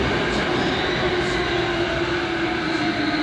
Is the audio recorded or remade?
recorded